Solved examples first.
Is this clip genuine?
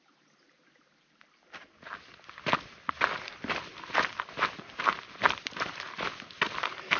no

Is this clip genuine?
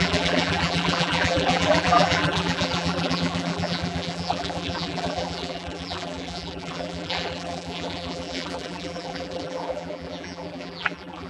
no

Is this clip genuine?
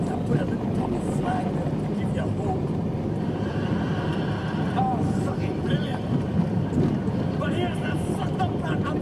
yes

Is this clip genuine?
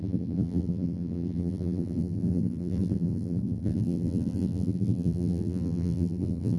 no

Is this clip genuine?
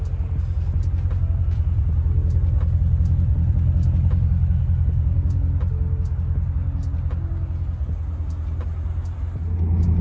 yes